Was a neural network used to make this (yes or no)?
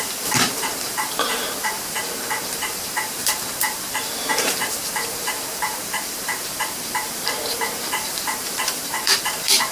yes